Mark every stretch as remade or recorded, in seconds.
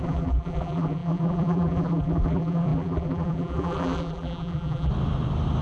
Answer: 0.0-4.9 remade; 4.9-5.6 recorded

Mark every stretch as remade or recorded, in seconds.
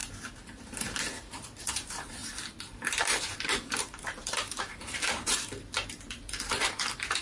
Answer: 0.0-1.7 recorded; 1.7-7.2 remade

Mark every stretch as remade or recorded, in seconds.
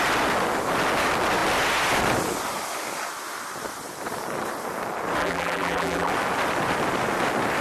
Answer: 0.0-5.2 recorded; 5.2-6.1 remade; 6.1-7.6 recorded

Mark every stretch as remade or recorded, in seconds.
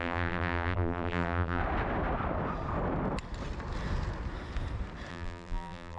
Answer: 0.0-1.6 remade; 1.6-5.1 recorded; 5.1-6.0 remade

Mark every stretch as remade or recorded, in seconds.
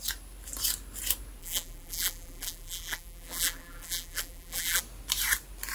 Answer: 0.0-1.4 recorded; 1.4-4.8 remade; 4.8-5.7 recorded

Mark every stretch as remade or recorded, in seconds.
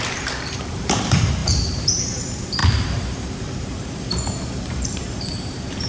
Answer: 0.0-2.6 remade; 2.6-4.4 recorded; 4.4-5.9 remade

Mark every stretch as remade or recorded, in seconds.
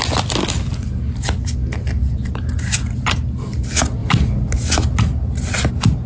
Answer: 0.0-6.1 recorded